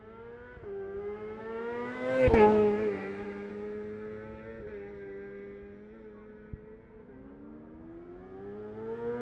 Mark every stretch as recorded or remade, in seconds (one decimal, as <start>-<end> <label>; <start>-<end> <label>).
0.0-1.4 recorded; 1.4-3.5 remade; 3.5-9.2 recorded

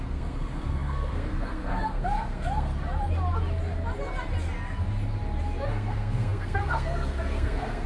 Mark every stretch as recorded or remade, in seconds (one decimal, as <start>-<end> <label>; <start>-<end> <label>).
0.0-2.7 remade; 2.7-5.7 recorded; 5.7-7.9 remade

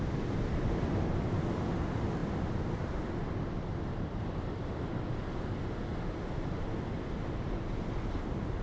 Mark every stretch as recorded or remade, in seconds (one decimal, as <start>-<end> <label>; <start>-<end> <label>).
0.0-8.6 recorded

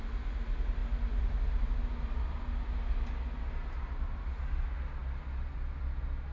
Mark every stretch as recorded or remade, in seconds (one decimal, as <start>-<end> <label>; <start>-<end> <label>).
0.0-6.3 recorded